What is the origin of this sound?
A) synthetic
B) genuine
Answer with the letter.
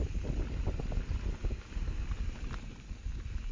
B